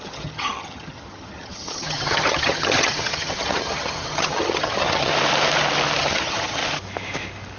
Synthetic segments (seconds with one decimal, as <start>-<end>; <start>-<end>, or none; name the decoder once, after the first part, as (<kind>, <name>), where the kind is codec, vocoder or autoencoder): 0.0-5.1 (vocoder, HiFi-GAN); 6.0-6.6